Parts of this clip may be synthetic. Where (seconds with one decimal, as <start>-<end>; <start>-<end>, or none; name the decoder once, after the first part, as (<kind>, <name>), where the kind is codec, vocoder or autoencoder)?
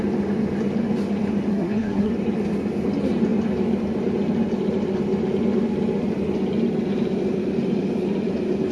1.5-2.1 (codec, SNAC)